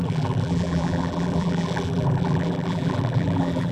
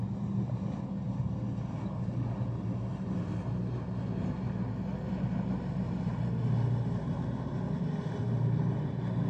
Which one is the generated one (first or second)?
first